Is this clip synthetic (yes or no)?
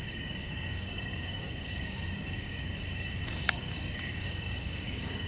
yes